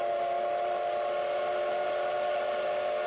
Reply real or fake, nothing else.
real